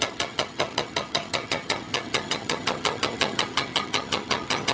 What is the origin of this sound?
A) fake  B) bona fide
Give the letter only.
A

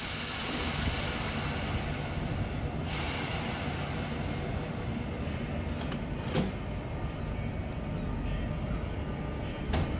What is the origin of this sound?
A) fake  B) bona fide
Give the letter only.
B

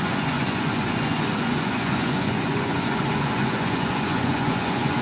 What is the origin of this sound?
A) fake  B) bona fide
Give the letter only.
A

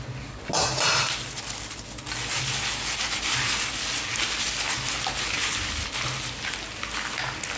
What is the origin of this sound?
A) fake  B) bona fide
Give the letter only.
B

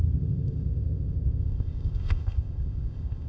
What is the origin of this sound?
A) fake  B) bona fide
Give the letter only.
A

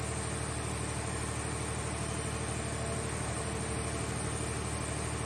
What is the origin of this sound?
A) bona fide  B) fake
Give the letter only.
A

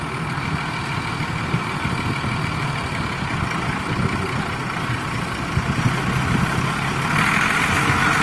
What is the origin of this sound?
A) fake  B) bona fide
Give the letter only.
B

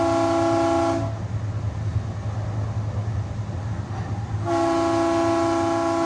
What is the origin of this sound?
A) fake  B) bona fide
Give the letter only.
B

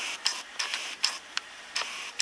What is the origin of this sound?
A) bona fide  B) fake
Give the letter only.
B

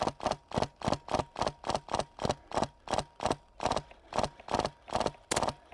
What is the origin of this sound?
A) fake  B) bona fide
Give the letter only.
B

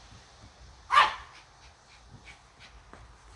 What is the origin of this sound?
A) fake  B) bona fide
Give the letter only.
B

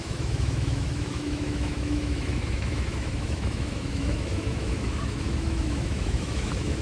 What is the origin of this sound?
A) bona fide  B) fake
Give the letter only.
B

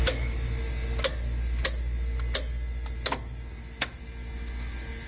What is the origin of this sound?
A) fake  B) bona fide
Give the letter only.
B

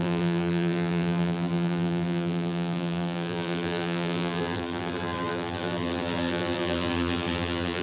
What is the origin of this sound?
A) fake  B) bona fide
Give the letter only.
A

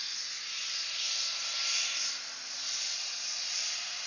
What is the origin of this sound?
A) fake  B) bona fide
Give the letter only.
B